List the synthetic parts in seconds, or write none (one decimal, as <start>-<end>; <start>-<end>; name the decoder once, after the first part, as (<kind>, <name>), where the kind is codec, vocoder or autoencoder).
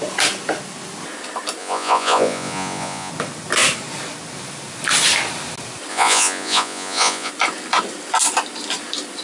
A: 1.6-3.1 (vocoder, Vocos); 5.9-7.3